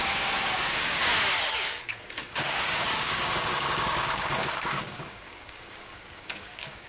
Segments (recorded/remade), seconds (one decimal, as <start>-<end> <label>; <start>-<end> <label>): 0.0-1.0 remade; 1.0-1.5 recorded; 1.5-6.9 remade